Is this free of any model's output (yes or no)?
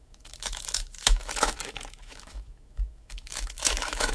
no